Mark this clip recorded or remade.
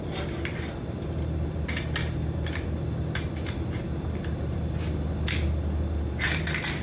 recorded